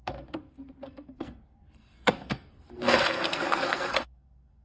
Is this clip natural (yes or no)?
no